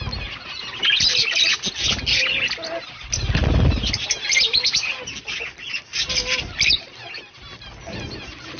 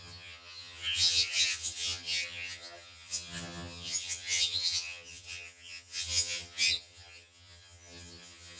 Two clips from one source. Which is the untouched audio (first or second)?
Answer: first